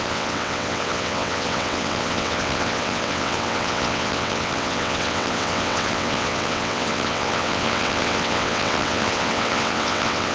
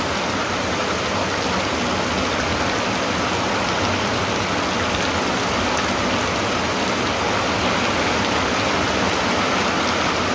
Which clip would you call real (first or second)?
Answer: second